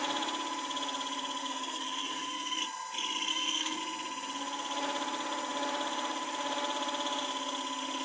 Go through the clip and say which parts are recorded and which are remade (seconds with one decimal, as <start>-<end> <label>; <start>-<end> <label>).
0.0-1.4 recorded; 1.4-2.6 remade; 2.6-3.3 recorded; 3.3-3.8 remade; 3.8-8.0 recorded